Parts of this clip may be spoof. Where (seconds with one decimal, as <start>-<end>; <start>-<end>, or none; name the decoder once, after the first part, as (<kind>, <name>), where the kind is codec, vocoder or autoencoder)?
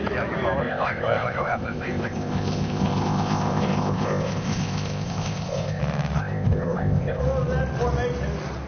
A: 0.6-5.8 (codec, ZipCodec); 6.2-7.2